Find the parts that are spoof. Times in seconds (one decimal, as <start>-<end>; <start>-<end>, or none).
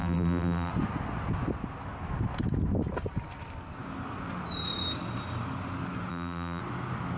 0.0-0.7; 6.1-6.6